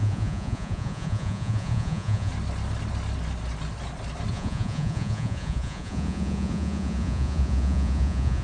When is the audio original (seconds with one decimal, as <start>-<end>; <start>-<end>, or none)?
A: 2.3-4.3